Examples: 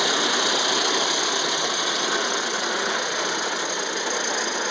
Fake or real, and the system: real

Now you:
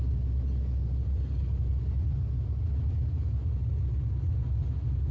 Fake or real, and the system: real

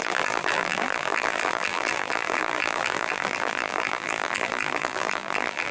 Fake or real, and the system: fake, vocoder, BigVGAN v2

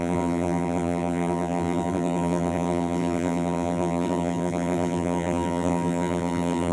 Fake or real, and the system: fake, vocoder, BigVGAN v2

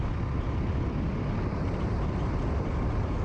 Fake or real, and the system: real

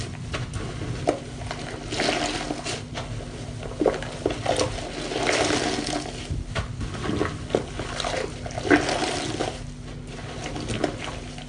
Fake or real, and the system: real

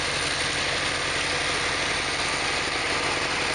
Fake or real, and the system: real